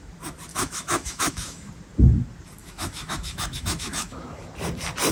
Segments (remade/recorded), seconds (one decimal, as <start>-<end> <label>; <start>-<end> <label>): 0.0-0.5 recorded; 0.5-1.7 remade; 1.7-2.6 recorded; 2.6-4.4 remade; 4.4-5.1 recorded